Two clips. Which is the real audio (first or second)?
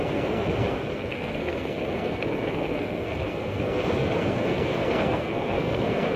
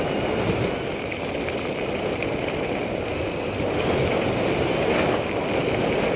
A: second